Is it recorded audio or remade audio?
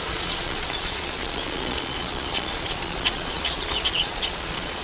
remade